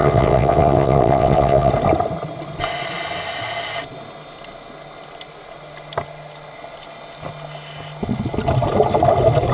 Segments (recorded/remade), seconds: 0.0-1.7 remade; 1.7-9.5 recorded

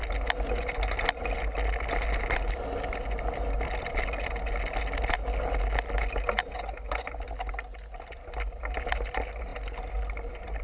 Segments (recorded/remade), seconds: 0.0-10.6 recorded